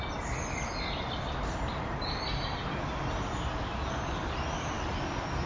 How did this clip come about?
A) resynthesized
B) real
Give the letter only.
B